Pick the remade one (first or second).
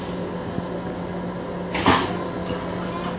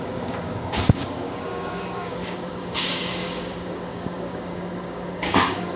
second